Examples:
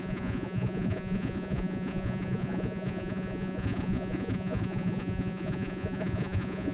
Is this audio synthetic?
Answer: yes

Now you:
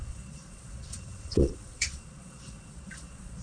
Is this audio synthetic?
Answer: yes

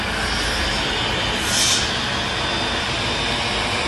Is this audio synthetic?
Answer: no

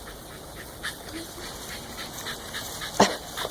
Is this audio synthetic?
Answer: no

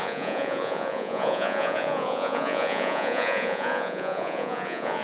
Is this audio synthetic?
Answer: yes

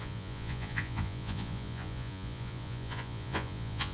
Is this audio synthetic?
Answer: yes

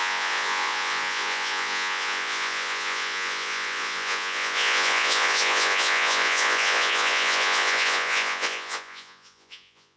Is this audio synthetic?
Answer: yes